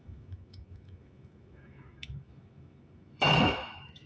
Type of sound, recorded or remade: remade